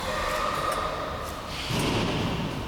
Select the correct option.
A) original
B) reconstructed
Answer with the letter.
A